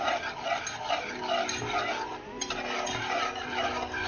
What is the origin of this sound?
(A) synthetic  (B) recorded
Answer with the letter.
B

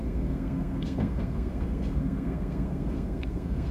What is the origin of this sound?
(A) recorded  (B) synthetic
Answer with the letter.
B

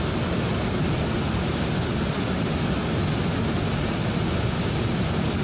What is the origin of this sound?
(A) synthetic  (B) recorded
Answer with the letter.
B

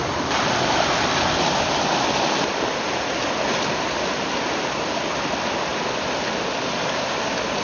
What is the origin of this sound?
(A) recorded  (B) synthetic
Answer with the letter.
A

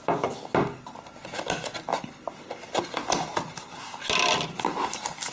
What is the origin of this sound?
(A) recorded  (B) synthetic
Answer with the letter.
A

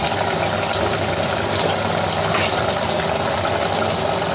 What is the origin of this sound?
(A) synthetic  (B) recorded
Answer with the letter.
B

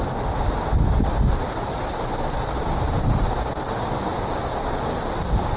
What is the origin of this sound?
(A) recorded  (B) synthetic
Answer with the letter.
A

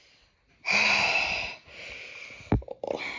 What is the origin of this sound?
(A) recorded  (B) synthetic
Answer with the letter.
A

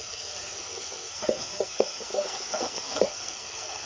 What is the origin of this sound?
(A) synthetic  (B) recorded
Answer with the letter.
A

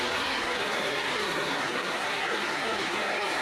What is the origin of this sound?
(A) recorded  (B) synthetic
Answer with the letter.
B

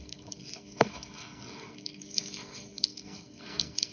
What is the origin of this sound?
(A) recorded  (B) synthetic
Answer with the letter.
B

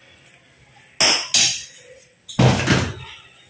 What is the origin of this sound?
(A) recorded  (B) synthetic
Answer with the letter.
A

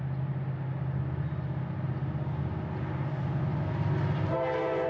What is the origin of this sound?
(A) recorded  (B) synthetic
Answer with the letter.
A